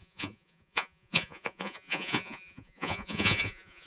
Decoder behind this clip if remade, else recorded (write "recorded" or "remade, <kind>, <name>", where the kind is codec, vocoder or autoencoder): remade, vocoder, Vocos